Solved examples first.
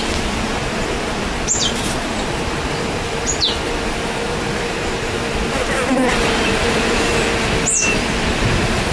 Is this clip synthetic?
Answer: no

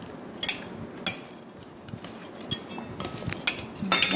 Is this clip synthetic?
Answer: no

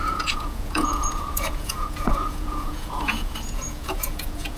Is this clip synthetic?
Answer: yes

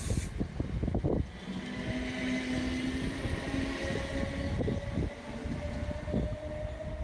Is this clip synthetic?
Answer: no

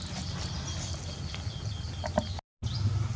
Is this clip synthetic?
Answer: no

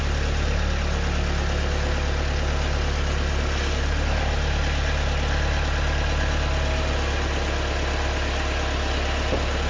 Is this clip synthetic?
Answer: no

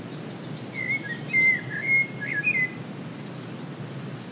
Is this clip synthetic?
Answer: no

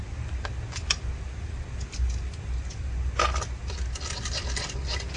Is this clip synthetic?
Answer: no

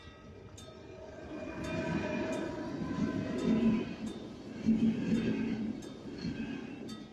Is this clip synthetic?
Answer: no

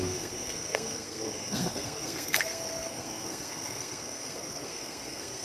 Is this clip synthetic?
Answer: yes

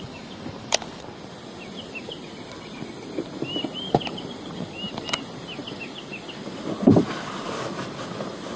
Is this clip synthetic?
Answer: no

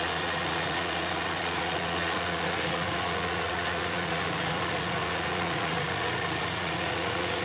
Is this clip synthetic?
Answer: yes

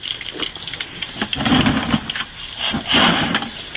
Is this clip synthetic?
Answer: no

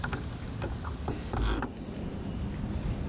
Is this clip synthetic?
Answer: no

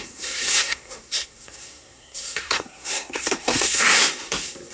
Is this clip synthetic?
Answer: yes